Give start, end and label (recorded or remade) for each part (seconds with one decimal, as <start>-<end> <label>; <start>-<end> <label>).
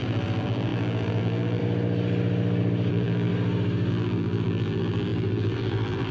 0.0-1.6 remade; 1.6-2.9 recorded; 2.9-3.3 remade; 3.3-3.9 recorded; 3.9-6.1 remade